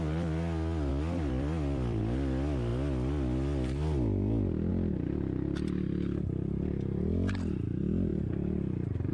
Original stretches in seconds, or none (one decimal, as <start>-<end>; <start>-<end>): 0.0-0.9; 2.0-9.1